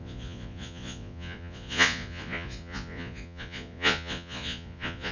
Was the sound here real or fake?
fake